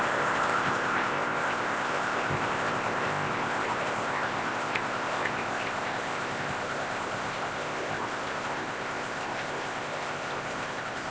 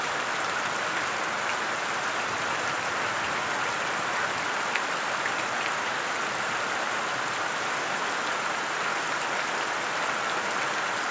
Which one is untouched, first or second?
second